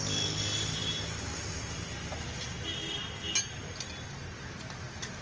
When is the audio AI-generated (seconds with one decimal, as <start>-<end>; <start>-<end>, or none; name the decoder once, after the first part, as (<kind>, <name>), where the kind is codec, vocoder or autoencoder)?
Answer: none